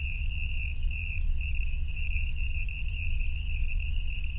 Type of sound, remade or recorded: remade